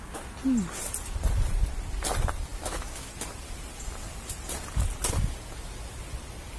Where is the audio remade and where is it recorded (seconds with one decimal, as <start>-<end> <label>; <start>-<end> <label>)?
0.0-2.5 recorded; 2.5-3.1 remade; 3.1-6.6 recorded